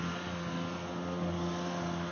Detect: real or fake real